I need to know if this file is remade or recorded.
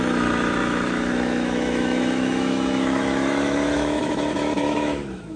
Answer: remade